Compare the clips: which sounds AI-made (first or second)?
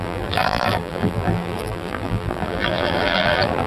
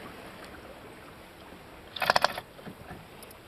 first